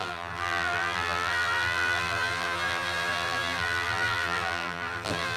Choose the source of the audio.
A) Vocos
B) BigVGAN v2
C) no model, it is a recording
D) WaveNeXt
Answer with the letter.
B